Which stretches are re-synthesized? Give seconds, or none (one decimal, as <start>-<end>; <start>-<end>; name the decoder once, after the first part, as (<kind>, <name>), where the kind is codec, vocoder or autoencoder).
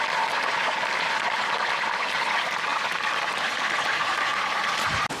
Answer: none